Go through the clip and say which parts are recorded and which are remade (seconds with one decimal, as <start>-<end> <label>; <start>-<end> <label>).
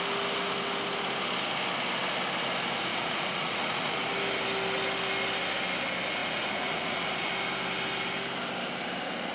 0.0-2.9 recorded; 2.9-4.1 remade; 4.1-6.2 recorded; 6.2-7.3 remade; 7.3-9.3 recorded